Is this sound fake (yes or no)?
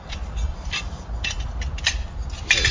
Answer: no